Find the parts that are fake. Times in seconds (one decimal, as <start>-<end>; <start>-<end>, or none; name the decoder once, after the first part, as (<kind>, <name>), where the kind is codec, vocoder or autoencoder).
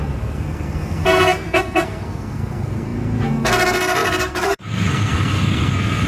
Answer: 0.0-6.1 (codec, SNAC)